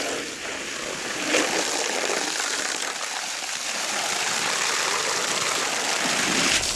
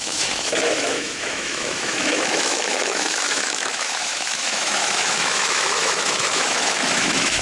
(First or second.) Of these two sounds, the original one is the first